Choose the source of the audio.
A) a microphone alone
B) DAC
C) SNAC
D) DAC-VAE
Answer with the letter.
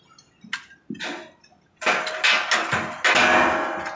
A